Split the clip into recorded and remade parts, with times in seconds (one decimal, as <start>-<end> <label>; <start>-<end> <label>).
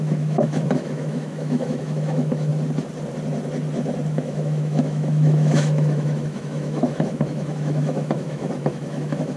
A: 0.0-2.5 remade; 2.5-4.1 recorded; 4.1-9.4 remade